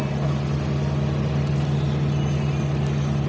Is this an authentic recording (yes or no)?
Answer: yes